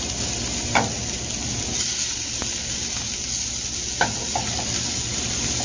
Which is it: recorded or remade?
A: recorded